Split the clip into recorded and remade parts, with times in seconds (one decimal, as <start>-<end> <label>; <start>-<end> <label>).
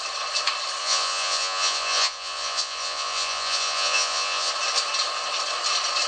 0.0-0.8 recorded; 0.8-4.5 remade; 4.5-6.1 recorded